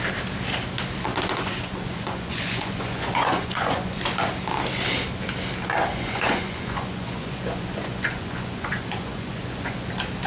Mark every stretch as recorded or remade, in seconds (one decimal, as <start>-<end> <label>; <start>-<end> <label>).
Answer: 0.0-1.1 recorded; 1.1-4.0 remade; 4.0-5.9 recorded; 5.9-9.9 remade; 9.9-10.3 recorded